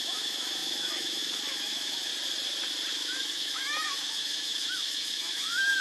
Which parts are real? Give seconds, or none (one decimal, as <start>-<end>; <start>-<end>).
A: 2.1-2.9